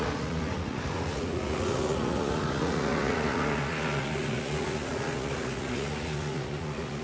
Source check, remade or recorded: remade